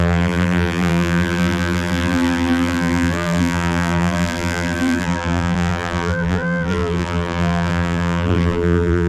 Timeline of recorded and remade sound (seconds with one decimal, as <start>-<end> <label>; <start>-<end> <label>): 0.0-9.1 remade